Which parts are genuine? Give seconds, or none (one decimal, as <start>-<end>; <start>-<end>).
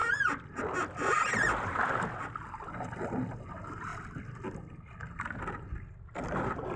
0.0-6.8